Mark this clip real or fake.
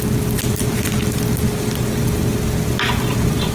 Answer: real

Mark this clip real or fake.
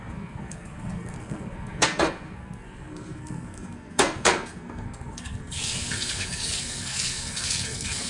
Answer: fake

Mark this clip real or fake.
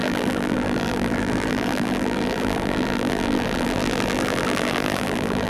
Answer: fake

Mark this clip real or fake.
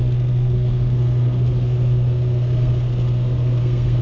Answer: fake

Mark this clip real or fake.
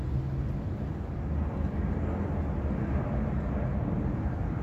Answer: real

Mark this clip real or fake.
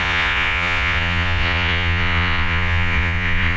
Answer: fake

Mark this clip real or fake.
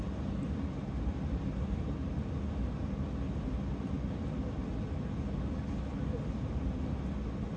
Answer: real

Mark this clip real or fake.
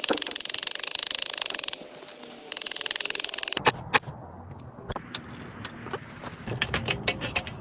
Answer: real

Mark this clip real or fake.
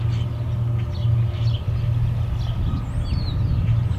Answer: real